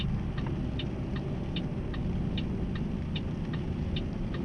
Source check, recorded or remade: remade